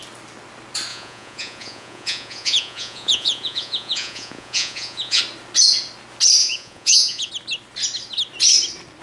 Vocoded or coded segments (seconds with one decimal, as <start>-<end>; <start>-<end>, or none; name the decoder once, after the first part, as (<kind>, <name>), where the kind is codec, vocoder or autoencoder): 0.9-5.2 (vocoder, Vocos); 6.4-7.3

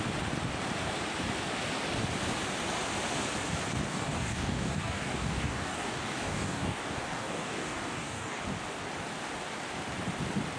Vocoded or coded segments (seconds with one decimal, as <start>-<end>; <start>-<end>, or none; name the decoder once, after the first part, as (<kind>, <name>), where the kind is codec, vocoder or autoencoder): 3.9-8.4 (codec, DAC)